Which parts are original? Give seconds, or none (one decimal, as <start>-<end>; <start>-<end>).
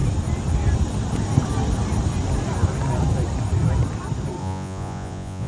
0.0-4.4